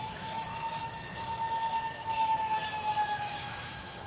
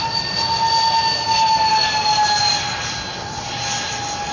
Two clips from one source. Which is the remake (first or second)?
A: first